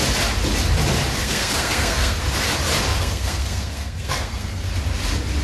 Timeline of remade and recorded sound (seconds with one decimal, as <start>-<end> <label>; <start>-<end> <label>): 0.0-1.2 recorded; 1.2-2.2 remade; 2.2-2.9 recorded; 2.9-4.7 remade; 4.7-5.4 recorded